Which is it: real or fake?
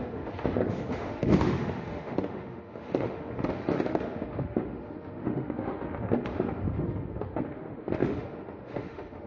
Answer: fake